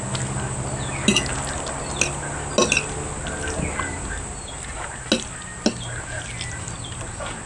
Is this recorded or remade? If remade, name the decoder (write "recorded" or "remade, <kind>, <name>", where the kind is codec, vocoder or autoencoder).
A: recorded